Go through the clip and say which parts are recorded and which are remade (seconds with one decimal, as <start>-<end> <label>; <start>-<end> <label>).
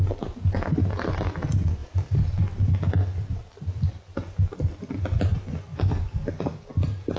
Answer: 0.0-1.8 recorded; 1.8-2.4 remade; 2.4-7.2 recorded